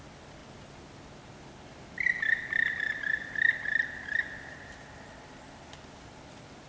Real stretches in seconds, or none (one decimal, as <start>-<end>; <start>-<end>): 0.0-6.7